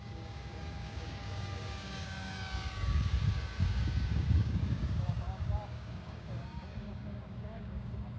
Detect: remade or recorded remade